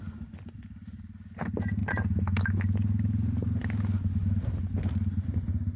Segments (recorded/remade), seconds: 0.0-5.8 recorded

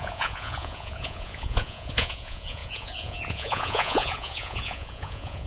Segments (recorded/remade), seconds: 0.0-5.5 remade

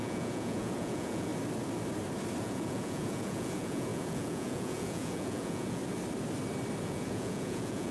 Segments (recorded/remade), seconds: 0.0-1.3 remade; 1.3-2.4 recorded; 2.4-5.8 remade; 5.8-6.8 recorded; 6.8-7.9 remade

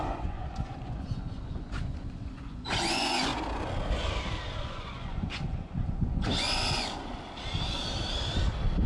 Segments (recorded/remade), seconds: 0.0-3.3 remade; 3.3-4.6 recorded; 4.6-7.1 remade; 7.1-8.9 recorded

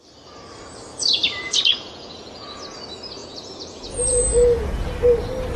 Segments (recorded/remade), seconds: 0.0-1.7 recorded; 1.7-2.6 remade; 2.6-3.2 recorded; 3.2-4.9 remade; 4.9-5.6 recorded

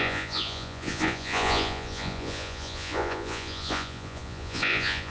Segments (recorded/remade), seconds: 0.0-5.1 remade

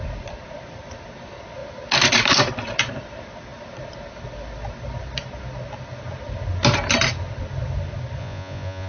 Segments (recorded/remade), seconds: 0.0-8.2 recorded; 8.2-8.9 remade